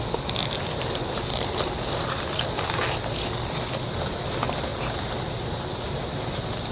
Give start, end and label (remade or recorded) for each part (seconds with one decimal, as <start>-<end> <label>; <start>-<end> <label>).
0.0-4.7 recorded; 4.7-5.7 remade; 5.7-6.7 recorded